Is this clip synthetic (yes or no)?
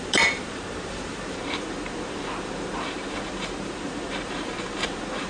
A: yes